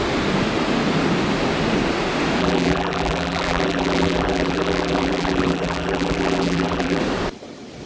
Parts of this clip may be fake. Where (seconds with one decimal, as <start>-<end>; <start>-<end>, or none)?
2.4-7.0